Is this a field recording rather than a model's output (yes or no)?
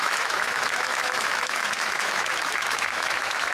no